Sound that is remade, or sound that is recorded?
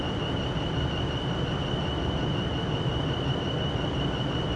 recorded